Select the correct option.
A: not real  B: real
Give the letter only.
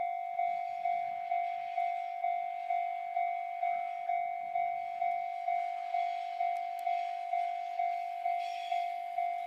B